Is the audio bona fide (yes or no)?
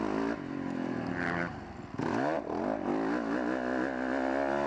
yes